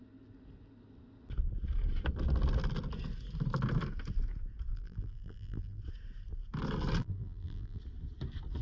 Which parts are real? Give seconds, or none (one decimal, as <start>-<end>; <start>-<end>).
0.0-4.7; 5.8-7.0; 7.8-8.6